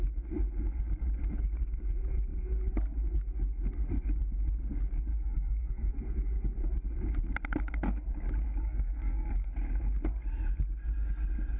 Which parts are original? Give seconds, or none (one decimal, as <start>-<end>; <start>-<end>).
0.0-5.1; 5.9-8.6; 9.5-11.6